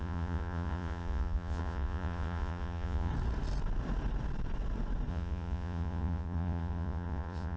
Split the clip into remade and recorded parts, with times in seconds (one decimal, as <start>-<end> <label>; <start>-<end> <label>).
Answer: 0.0-3.1 remade; 3.1-5.1 recorded; 5.1-7.6 remade